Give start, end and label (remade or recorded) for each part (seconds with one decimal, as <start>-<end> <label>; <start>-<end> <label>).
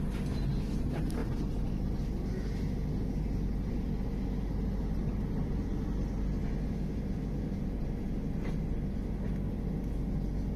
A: 0.0-10.6 recorded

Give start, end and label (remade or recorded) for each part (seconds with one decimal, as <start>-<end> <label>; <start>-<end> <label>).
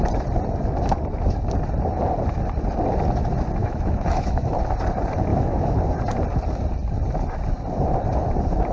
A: 0.0-3.6 recorded; 3.6-4.5 remade; 4.5-5.3 recorded; 5.3-5.8 remade; 5.8-8.7 recorded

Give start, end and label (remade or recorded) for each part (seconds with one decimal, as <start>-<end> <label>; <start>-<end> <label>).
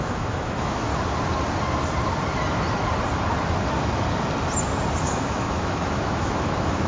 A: 0.0-0.9 remade; 0.9-5.0 recorded; 5.0-6.9 remade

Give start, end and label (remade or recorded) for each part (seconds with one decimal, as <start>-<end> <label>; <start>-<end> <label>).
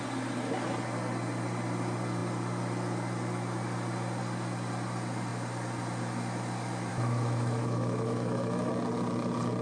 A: 0.0-6.9 recorded; 6.9-8.7 remade; 8.7-9.6 recorded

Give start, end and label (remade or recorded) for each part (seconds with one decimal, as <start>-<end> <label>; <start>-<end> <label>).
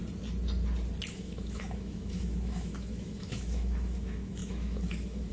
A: 0.0-1.1 recorded; 1.1-5.3 remade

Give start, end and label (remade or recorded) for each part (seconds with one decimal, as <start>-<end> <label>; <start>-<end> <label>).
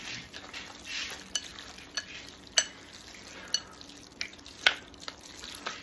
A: 0.0-5.8 recorded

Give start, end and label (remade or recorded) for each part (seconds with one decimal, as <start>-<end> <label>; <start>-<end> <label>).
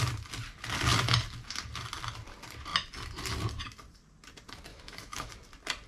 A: 0.0-4.7 recorded; 4.7-5.3 remade; 5.3-5.9 recorded